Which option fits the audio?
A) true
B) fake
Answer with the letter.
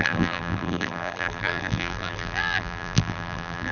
B